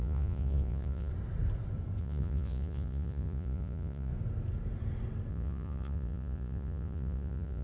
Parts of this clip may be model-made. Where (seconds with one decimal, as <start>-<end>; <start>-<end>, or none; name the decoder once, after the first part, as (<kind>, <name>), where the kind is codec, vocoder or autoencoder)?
0.0-1.1 (vocoder, Vocos); 2.0-4.1; 5.3-7.6